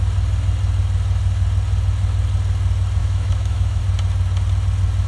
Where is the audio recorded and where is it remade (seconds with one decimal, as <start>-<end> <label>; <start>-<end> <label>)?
0.0-3.0 recorded; 3.0-3.8 remade; 3.8-5.1 recorded